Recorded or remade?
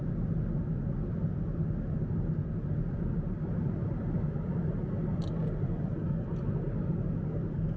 recorded